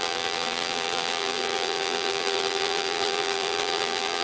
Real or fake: fake